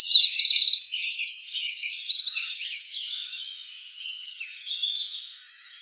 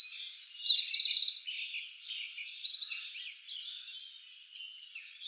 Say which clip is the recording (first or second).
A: second